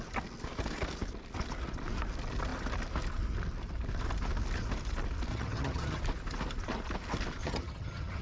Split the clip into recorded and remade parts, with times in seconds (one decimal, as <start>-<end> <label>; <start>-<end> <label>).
0.0-5.3 recorded; 5.3-6.0 remade; 6.0-7.4 recorded; 7.4-8.2 remade